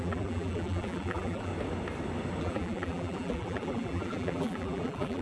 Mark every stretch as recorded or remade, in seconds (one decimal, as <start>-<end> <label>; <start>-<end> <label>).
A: 0.0-1.5 remade; 1.5-2.4 recorded; 2.4-5.2 remade